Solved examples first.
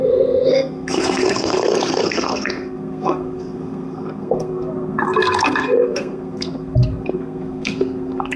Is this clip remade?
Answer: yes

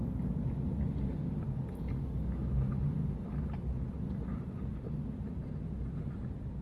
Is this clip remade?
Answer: no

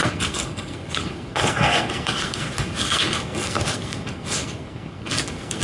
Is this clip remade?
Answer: yes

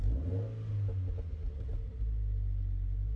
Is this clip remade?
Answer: no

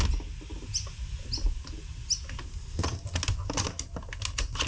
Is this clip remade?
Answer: no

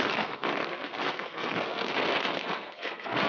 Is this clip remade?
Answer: yes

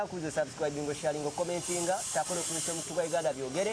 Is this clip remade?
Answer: no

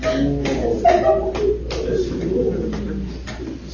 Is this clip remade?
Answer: no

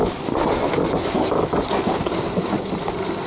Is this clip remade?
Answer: no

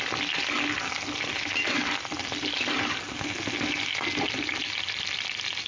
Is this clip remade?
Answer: no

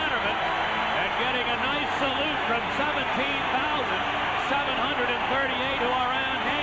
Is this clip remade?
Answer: no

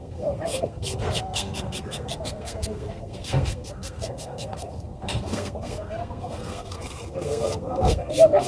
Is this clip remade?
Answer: yes